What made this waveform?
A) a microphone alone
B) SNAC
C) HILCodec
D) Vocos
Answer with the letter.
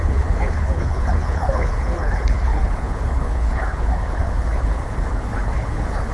C